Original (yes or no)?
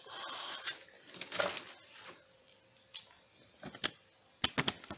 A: yes